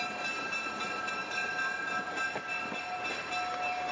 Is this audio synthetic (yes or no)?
no